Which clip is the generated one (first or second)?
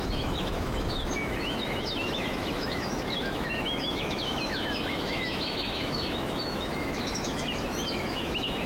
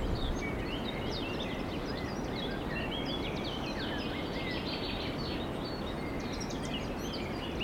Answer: first